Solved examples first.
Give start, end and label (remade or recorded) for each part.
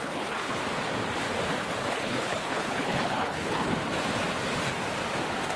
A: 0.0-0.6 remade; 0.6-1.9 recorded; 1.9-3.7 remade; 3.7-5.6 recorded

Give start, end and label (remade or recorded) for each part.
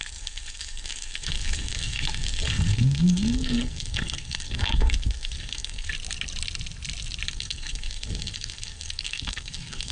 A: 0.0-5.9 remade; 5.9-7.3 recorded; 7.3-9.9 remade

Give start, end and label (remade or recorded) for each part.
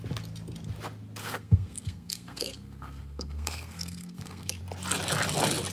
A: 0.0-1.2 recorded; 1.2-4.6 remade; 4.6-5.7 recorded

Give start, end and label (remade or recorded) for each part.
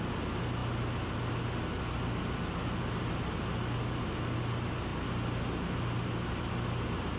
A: 0.0-7.2 recorded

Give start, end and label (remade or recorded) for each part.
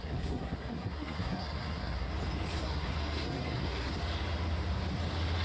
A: 0.0-2.1 remade; 2.1-2.6 recorded; 2.6-3.9 remade; 3.9-5.4 recorded